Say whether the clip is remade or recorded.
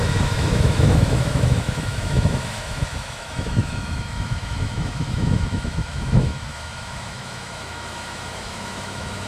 remade